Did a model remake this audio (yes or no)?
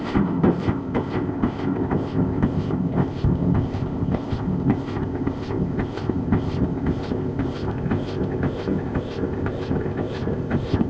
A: yes